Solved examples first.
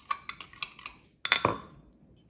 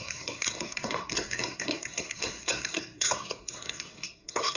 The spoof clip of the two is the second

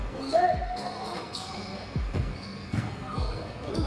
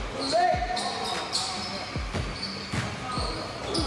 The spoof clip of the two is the first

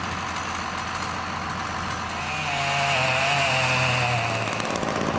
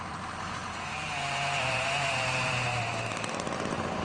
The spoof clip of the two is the second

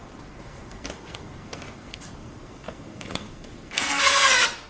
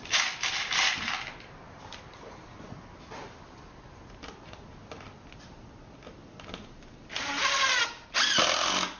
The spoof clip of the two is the first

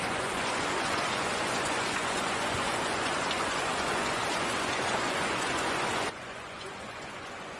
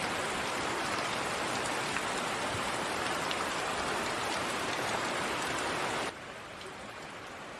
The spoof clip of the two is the first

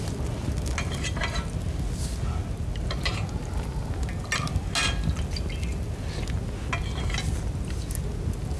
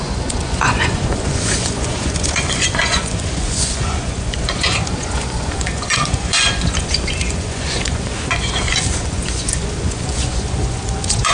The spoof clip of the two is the second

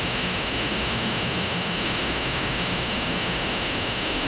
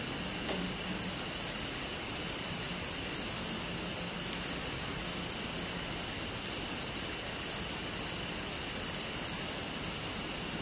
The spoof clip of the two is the first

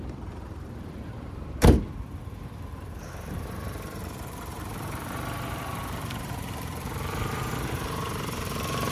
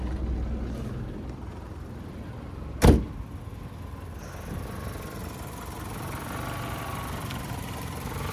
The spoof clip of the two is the first